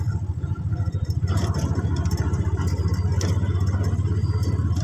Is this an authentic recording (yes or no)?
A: yes